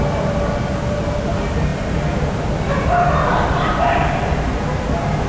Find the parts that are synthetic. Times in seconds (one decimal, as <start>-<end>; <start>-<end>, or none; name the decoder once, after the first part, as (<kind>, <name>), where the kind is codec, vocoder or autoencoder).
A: none